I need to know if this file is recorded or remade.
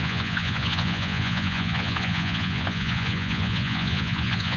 remade